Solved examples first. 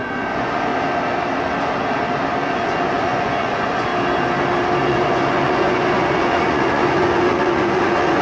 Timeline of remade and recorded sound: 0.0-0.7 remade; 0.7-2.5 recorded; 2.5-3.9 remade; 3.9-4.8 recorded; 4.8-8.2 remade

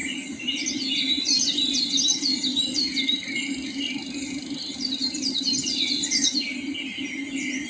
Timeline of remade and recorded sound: 0.0-1.8 remade; 1.8-7.7 recorded

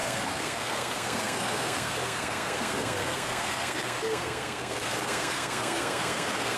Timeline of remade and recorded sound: 0.0-6.6 remade

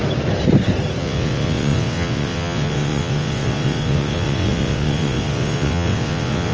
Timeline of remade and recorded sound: 0.0-1.0 recorded; 1.0-6.5 remade

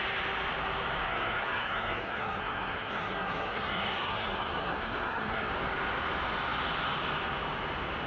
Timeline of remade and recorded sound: 0.0-1.1 recorded; 1.1-5.5 remade; 5.5-8.1 recorded

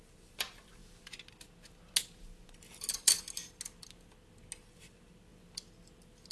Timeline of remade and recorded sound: 0.0-0.8 remade; 0.8-4.6 recorded; 4.6-5.3 remade; 5.3-6.3 recorded